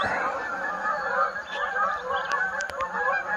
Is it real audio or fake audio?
real